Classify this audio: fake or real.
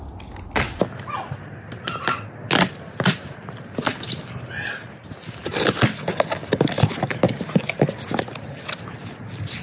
real